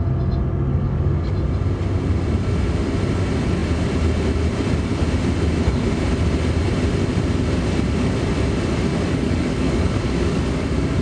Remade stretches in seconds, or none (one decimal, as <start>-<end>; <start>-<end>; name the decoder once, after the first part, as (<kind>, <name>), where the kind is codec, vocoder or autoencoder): 0.7-1.3 (codec, DAC); 8.9-11.0